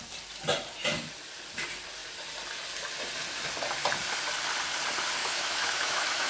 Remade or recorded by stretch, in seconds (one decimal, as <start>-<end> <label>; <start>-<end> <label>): 0.0-5.2 recorded; 5.2-6.3 remade